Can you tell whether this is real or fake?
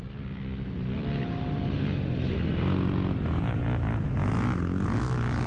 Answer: real